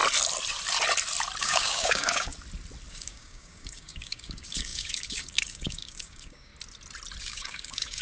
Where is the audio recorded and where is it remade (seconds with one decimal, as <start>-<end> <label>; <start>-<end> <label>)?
0.0-1.4 recorded; 1.4-2.3 remade; 2.3-2.9 recorded; 2.9-6.5 remade; 6.5-7.2 recorded; 7.2-8.0 remade

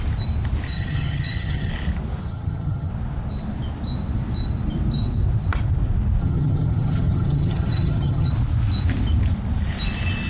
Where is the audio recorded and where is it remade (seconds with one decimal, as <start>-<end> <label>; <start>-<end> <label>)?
0.0-0.7 recorded; 0.7-1.7 remade; 1.7-2.2 recorded; 2.2-2.9 remade; 2.9-6.2 recorded; 6.2-8.3 remade; 8.3-10.3 recorded

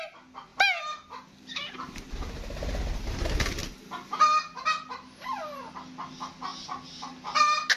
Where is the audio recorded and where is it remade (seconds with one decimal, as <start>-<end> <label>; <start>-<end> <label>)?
0.0-7.8 recorded

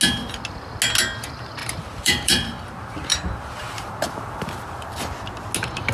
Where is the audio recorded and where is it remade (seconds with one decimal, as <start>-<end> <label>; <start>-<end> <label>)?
0.0-1.6 recorded; 1.6-5.1 remade; 5.1-5.9 recorded

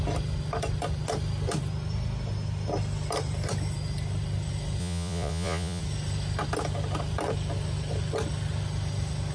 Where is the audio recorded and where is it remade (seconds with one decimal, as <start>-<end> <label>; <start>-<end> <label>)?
0.0-4.8 recorded; 4.8-5.8 remade; 5.8-9.3 recorded

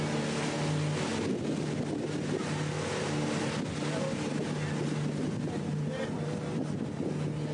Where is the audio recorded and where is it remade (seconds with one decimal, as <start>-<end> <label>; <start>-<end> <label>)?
0.0-7.5 recorded